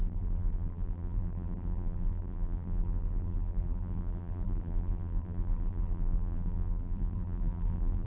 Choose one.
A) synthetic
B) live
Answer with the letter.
A